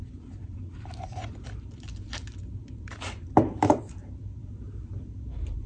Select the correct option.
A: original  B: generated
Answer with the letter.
B